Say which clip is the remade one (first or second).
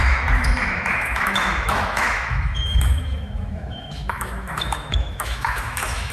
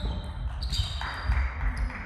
first